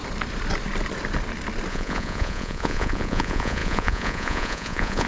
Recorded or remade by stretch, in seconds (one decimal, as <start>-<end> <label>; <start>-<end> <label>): 0.0-1.7 recorded; 1.7-5.1 remade